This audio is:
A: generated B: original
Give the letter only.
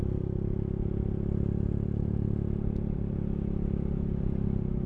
B